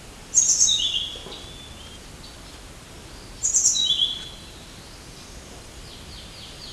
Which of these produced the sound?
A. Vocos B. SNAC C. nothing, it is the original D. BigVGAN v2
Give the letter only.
C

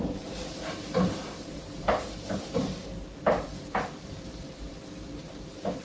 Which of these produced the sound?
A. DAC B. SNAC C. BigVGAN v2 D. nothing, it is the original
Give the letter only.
C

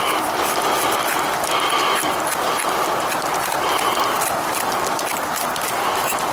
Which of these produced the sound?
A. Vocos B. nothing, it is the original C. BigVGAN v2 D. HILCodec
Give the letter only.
C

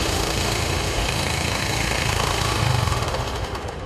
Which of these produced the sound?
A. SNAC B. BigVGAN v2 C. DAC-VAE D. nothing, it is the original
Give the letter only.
C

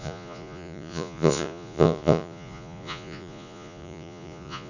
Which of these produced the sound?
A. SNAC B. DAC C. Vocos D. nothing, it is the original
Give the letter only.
C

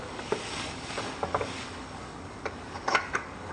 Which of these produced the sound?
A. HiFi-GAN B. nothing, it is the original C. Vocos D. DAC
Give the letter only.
D